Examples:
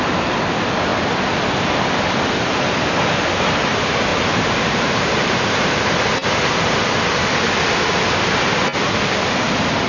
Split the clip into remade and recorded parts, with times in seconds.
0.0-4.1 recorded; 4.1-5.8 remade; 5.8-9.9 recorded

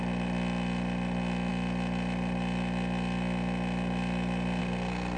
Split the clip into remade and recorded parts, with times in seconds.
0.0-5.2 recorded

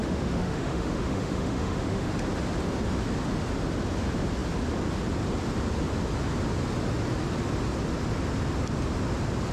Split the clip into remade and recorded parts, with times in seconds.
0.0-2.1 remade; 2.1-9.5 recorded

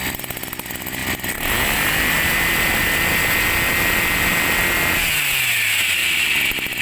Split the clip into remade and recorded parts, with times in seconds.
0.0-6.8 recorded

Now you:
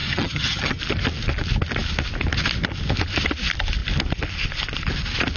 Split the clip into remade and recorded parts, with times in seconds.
0.0-0.8 remade; 0.8-5.4 recorded

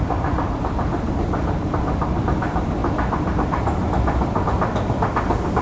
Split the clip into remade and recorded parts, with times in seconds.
0.0-5.6 remade

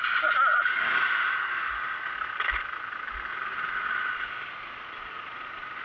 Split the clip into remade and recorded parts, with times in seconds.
0.0-0.5 recorded; 0.5-2.1 remade; 2.1-5.8 recorded

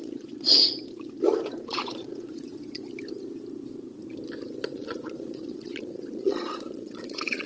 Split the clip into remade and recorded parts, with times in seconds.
0.0-0.6 remade; 0.6-1.5 recorded; 1.5-2.8 remade; 2.8-4.6 recorded; 4.6-7.5 remade